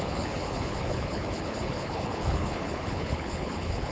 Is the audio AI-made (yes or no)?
yes